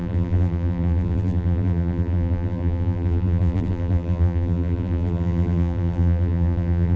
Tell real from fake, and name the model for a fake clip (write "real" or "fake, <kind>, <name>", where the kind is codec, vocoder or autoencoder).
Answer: fake, vocoder, BigVGAN v2